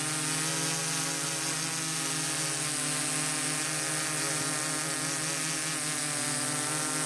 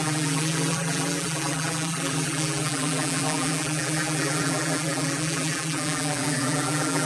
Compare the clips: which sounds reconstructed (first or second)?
second